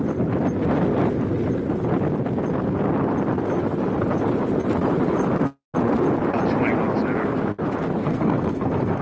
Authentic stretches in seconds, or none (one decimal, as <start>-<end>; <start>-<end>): 0.0-8.0